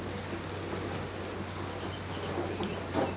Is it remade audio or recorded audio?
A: recorded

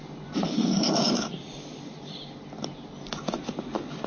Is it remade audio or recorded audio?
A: recorded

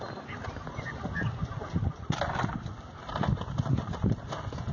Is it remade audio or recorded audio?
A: recorded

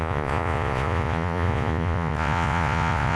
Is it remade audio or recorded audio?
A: remade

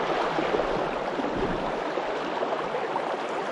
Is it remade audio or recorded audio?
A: recorded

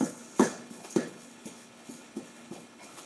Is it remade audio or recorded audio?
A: remade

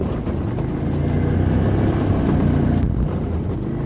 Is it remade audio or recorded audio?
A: recorded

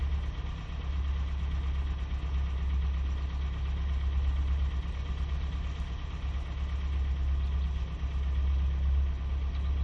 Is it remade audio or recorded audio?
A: recorded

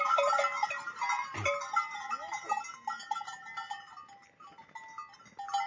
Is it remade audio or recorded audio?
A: recorded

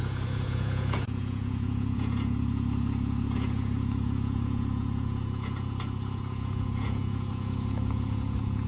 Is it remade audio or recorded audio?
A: remade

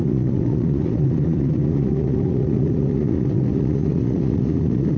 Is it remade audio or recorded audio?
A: remade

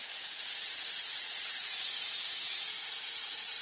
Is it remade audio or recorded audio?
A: remade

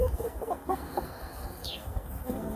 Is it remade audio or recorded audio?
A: remade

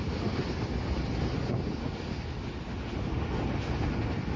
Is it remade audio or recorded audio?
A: recorded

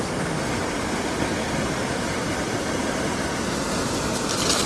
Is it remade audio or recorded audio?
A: recorded